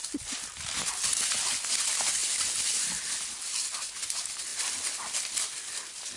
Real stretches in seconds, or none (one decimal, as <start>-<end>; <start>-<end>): 0.0-6.2